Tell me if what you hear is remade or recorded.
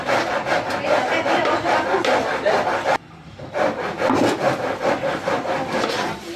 recorded